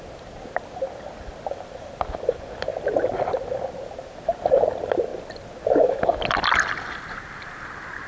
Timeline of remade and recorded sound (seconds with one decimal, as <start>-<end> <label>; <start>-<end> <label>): 0.0-8.1 recorded